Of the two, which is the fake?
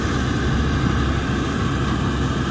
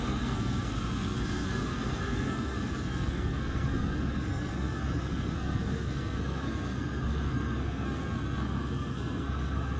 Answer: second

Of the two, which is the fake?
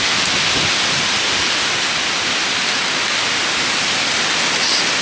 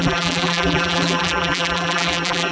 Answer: second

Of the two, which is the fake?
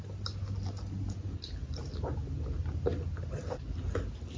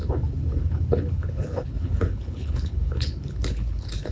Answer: second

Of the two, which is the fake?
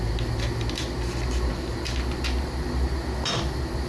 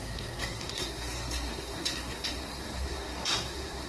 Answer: second